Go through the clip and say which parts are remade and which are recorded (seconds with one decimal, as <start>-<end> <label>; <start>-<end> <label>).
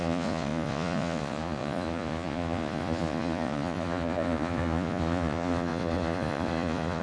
0.0-7.0 remade